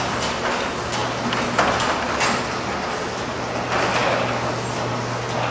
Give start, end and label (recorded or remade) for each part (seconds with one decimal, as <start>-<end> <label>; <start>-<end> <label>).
0.0-5.5 recorded